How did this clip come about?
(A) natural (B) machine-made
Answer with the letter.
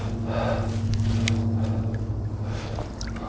A